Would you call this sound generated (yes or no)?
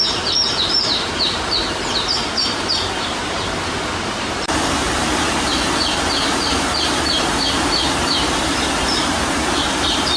yes